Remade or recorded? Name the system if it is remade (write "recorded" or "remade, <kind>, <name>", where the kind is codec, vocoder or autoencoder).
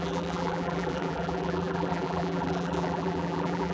remade, vocoder, BigVGAN v2